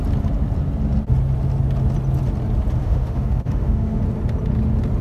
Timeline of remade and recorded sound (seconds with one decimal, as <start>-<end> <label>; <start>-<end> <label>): 0.0-2.8 recorded; 2.8-4.0 remade; 4.0-5.0 recorded